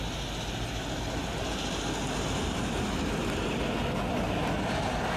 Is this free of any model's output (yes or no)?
yes